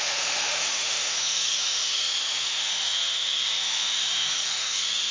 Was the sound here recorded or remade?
remade